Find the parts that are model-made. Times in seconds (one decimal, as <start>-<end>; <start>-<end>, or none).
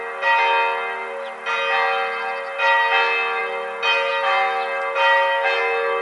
none